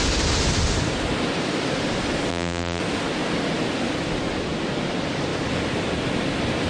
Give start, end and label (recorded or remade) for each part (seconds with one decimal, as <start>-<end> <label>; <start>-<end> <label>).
0.0-2.3 recorded; 2.3-2.8 remade; 2.8-6.7 recorded